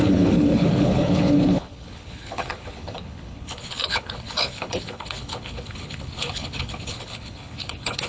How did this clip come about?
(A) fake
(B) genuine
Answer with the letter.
A